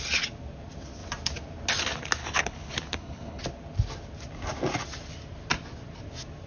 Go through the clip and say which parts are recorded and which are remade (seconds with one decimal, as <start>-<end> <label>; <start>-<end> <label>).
0.0-2.2 recorded; 2.2-3.4 remade; 3.4-6.5 recorded